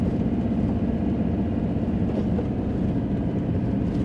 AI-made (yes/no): no